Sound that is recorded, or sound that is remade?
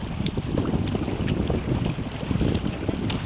recorded